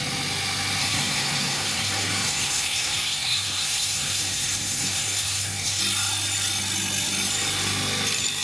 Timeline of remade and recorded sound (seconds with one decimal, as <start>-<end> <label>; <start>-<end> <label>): 0.0-0.8 recorded; 0.8-5.8 remade; 5.8-8.4 recorded